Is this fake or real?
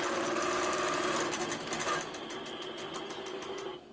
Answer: real